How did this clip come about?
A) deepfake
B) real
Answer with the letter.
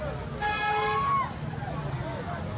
B